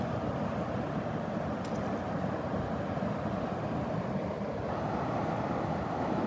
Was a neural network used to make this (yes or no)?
no